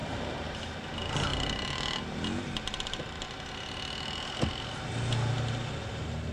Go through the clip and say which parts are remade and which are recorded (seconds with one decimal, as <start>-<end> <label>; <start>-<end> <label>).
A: 0.0-6.3 recorded